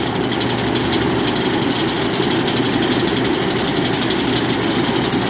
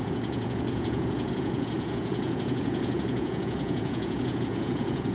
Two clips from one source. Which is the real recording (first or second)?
first